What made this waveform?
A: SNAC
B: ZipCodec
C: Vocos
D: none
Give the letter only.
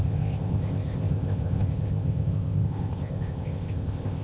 B